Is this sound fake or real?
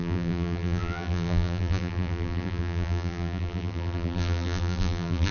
fake